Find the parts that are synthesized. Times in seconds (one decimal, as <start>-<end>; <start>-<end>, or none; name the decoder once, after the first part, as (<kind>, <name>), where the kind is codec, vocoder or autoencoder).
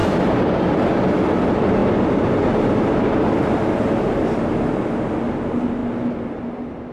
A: 0.0-0.8 (vocoder, BigVGAN v2)